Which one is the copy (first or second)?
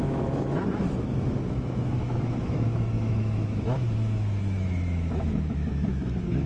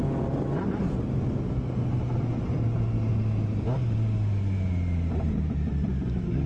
first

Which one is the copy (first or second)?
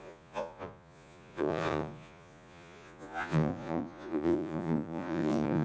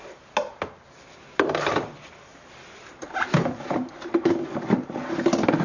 first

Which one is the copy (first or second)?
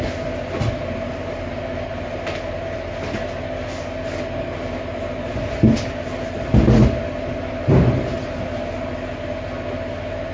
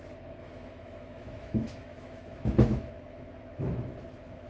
second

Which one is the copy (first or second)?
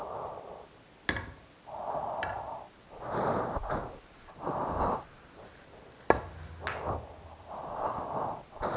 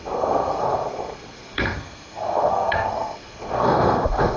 second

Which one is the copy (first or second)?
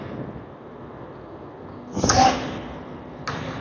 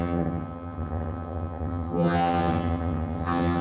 second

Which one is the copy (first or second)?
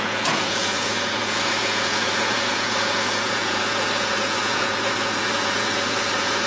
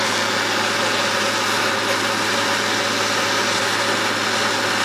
first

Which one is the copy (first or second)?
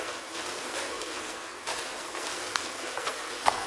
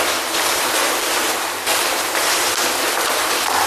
first